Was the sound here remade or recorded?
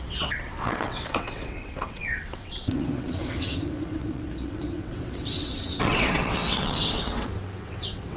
remade